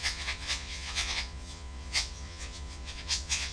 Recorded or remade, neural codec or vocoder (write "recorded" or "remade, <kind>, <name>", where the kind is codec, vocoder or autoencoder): remade, vocoder, Vocos